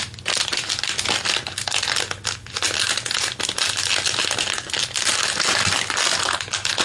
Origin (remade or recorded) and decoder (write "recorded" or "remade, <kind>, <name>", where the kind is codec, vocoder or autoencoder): recorded